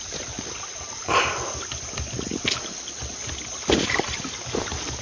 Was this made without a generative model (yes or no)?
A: yes